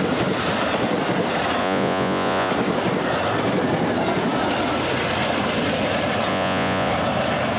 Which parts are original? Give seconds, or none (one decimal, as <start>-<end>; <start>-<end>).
0.0-1.6; 2.5-6.3; 6.9-7.6